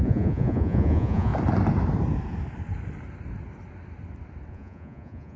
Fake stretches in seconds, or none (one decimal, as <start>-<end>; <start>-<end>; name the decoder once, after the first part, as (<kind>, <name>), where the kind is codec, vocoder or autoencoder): 0.0-1.3 (vocoder, Vocos); 4.5-5.4